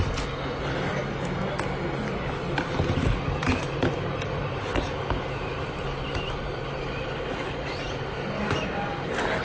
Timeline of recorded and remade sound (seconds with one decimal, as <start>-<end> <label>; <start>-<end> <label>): 0.0-9.4 recorded